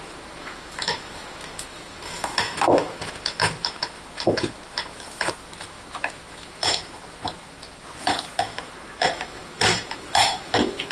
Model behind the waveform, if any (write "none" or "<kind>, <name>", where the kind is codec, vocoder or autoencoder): autoencoder, DAC-VAE